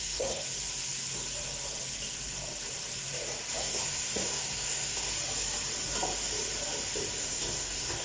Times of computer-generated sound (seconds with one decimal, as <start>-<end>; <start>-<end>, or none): 0.0-0.4; 3.6-5.1; 7.2-8.0